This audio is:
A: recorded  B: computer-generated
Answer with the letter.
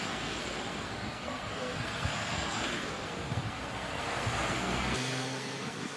B